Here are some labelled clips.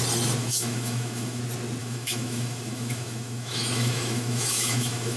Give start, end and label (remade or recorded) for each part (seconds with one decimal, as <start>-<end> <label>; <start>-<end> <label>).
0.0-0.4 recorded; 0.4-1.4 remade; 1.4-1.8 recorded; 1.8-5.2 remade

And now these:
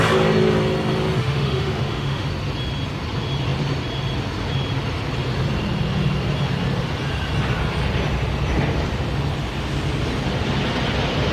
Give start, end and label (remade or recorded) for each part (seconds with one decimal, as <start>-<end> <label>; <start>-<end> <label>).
0.0-1.2 recorded; 1.2-2.3 remade; 2.3-11.3 recorded

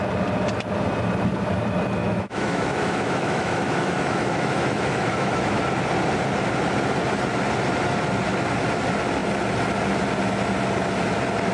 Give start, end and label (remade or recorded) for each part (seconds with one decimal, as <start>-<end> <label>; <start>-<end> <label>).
0.0-2.0 recorded; 2.0-5.6 remade; 5.6-11.5 recorded

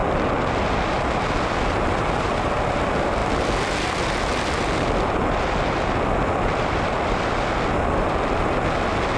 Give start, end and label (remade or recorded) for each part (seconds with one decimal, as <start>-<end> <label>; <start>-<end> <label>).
0.0-9.2 recorded

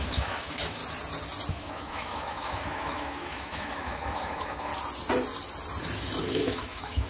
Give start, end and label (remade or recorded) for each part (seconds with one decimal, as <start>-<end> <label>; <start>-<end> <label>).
0.0-0.8 remade; 0.8-1.5 recorded; 1.5-4.7 remade; 4.7-6.3 recorded; 6.3-7.1 remade

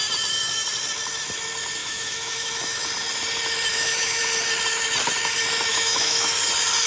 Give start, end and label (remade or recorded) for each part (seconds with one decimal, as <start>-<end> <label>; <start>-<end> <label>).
0.0-1.8 recorded; 1.8-2.8 remade; 2.8-3.7 recorded; 3.7-4.2 remade; 4.2-5.7 recorded; 5.7-6.3 remade; 6.3-6.9 recorded